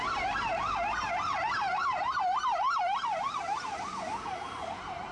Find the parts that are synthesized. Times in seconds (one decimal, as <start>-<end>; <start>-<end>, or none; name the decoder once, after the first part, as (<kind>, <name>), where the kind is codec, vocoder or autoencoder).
none